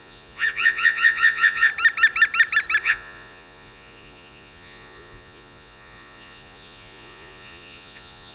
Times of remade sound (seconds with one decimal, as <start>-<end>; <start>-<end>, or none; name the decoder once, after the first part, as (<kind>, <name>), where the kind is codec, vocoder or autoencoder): 0.0-1.7 (vocoder, Vocos); 2.8-8.3